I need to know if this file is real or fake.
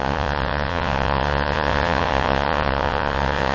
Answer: fake